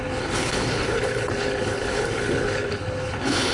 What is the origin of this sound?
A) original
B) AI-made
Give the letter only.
B